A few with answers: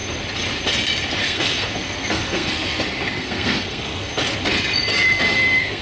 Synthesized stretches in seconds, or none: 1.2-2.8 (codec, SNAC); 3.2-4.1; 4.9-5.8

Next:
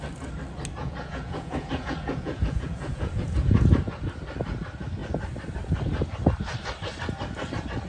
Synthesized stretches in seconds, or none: 0.8-3.7 (vocoder, Vocos)

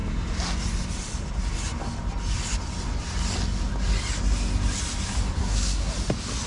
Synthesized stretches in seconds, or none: 5.4-5.9 (codec, SNAC)

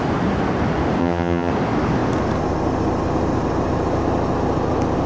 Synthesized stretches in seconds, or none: 1.0-1.5 (vocoder, HiFi-GAN)

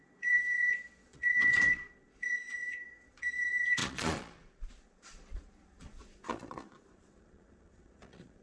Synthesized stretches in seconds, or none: 0.0-8.4 (vocoder, Vocos)

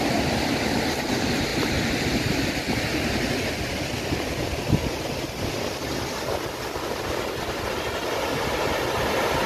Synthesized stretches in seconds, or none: none

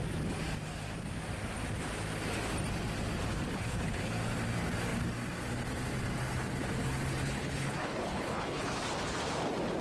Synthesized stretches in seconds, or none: 3.3-4.1 (codec, HILCodec); 7.2-8.8

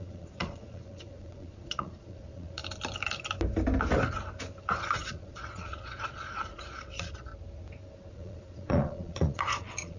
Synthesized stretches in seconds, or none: 0.0-2.6 (vocoder, Vocos); 4.8-7.3; 8.1-10.0